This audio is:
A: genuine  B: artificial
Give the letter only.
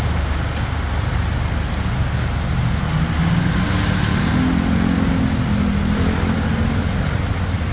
A